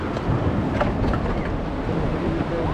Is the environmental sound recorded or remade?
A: recorded